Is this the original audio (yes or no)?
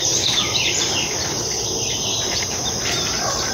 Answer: no